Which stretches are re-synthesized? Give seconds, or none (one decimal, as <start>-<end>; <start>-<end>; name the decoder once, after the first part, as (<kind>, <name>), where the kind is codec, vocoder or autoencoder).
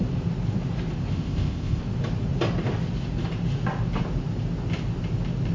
1.1-1.8 (codec, ZipCodec)